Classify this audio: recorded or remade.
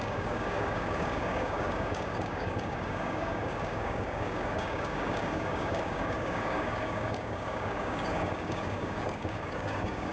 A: remade